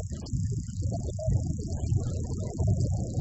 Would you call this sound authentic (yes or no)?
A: yes